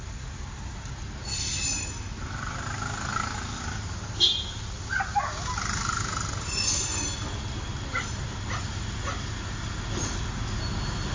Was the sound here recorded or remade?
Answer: recorded